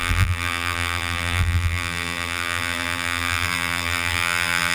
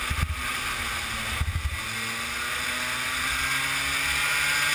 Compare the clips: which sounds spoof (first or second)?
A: first